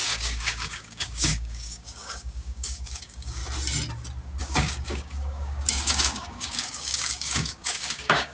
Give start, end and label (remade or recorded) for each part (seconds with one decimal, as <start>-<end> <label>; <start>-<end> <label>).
0.0-3.4 remade; 3.4-4.4 recorded; 4.4-8.3 remade